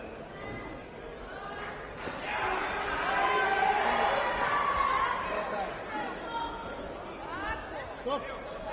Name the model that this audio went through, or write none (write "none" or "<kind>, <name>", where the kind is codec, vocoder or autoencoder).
none